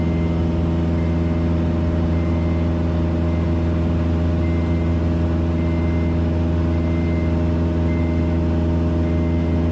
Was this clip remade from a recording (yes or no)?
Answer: no